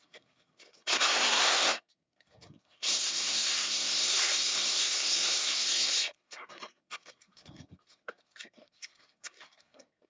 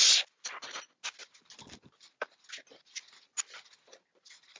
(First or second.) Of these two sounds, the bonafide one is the second